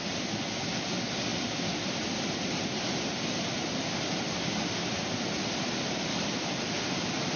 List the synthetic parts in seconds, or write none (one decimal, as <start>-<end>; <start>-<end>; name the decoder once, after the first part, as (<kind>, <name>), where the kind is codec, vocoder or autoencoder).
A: none